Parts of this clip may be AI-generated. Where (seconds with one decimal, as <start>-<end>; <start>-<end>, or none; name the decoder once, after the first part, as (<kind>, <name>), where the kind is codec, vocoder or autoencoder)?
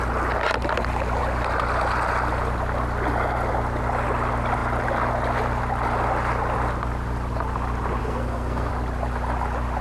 8.0-8.7 (codec, SNAC)